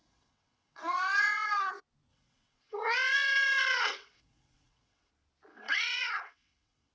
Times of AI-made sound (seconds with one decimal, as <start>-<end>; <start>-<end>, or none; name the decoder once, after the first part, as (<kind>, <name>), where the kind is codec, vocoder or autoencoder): 0.0-1.7 (vocoder, WaveNeXt); 2.1-5.1; 5.5-6.9